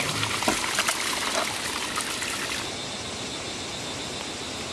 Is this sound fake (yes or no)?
no